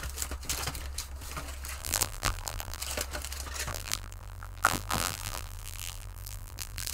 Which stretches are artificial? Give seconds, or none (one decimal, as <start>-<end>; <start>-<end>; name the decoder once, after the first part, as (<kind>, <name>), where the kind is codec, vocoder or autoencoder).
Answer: 1.8-2.8 (vocoder, BigVGAN v2); 3.7-6.9